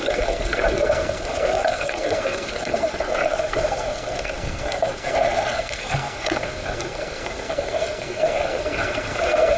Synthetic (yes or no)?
yes